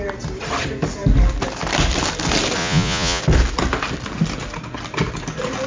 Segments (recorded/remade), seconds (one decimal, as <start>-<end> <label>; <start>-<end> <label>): 0.0-2.6 recorded; 2.6-3.2 remade; 3.2-5.7 recorded